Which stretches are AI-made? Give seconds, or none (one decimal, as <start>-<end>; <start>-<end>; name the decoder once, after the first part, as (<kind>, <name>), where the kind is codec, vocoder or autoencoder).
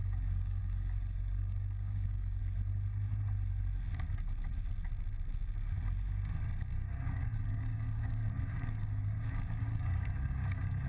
0.0-2.4 (codec, DAC); 6.6-10.9